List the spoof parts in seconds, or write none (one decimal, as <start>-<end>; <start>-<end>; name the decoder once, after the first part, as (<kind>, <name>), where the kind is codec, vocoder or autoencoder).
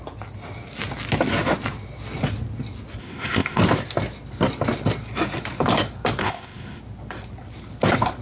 3.0-3.6 (codec, ZipCodec); 6.2-6.8